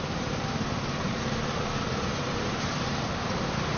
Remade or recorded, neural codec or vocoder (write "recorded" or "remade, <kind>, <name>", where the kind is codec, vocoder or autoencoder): remade, vocoder, BigVGAN v2